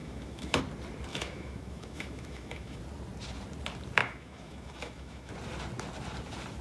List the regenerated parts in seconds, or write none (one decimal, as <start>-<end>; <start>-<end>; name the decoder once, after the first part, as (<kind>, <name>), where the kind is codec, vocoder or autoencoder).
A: 0.0-0.6 (autoencoder, DAC-VAE); 1.1-2.8; 4.0-5.3